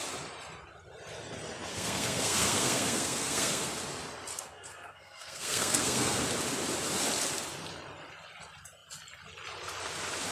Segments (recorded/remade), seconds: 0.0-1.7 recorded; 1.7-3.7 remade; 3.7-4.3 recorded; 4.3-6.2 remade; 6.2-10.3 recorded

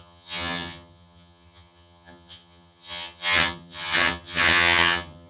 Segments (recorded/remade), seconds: 0.0-5.3 remade

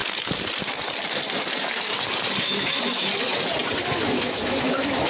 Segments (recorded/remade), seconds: 0.0-2.4 recorded; 2.4-3.1 remade; 3.1-3.9 recorded; 3.9-5.1 remade

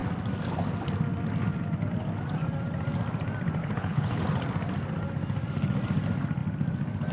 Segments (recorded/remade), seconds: 0.0-3.6 recorded; 3.6-4.2 remade; 4.2-7.1 recorded